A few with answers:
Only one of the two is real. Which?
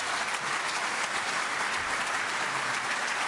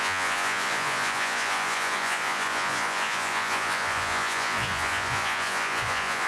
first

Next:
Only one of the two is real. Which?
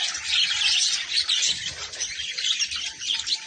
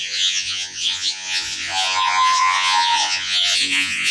first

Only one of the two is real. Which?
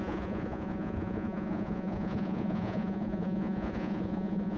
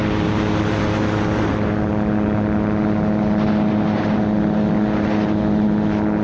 second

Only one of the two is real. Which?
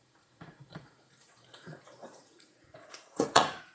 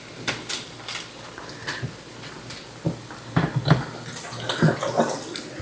second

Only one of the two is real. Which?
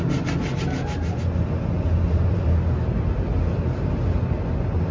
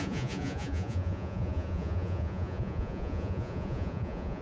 first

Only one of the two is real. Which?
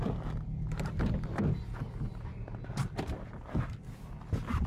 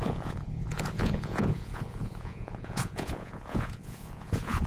first